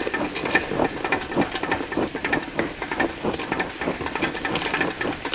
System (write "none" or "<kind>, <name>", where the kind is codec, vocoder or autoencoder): none